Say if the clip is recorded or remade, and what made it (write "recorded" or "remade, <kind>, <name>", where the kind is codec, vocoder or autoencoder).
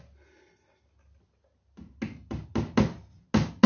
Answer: recorded